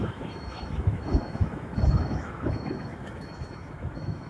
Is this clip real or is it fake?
fake